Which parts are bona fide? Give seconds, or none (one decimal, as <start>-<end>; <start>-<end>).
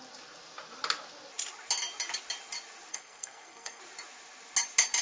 0.0-2.9; 3.8-5.0